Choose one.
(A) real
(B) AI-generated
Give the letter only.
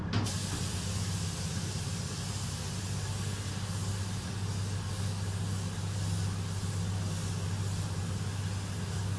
A